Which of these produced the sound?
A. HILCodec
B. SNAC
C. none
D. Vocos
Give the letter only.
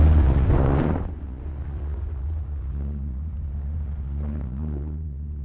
D